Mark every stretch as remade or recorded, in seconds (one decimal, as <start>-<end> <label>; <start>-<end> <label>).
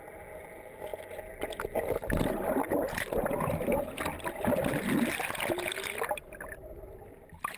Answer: 0.0-7.6 recorded